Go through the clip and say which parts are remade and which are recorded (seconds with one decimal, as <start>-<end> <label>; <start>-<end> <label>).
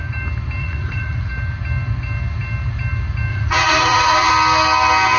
0.0-0.6 recorded; 0.6-1.3 remade; 1.3-3.3 recorded; 3.3-4.3 remade; 4.3-5.2 recorded